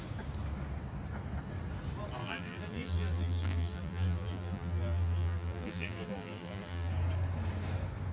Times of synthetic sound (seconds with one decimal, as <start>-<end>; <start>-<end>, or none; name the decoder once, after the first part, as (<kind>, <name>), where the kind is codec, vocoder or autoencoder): 2.2-6.9 (vocoder, BigVGAN v2)